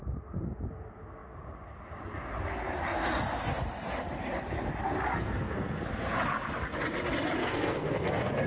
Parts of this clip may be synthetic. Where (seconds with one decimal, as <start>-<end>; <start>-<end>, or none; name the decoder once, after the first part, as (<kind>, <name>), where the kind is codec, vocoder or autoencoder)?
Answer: 5.1-5.8 (codec, SNAC); 7.4-8.5